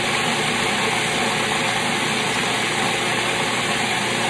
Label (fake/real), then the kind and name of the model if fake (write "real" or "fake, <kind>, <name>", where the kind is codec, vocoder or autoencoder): real